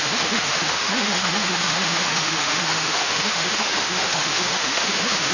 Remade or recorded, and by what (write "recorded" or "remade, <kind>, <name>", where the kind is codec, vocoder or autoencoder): remade, autoencoder, DAC-VAE